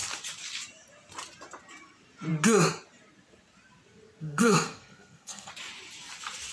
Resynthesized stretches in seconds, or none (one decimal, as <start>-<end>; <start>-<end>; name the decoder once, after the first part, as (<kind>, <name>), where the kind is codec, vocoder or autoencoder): 4.2-5.5 (codec, SNAC)